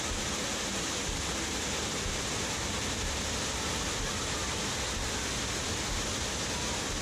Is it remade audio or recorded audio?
recorded